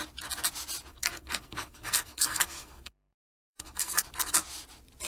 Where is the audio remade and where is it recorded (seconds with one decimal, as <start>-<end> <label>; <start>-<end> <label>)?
0.0-0.9 recorded; 0.9-4.0 remade; 4.0-5.1 recorded